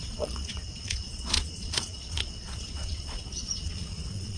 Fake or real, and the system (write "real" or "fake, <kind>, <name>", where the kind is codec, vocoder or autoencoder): fake, vocoder, Vocos